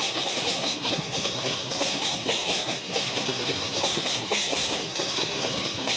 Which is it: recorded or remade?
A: remade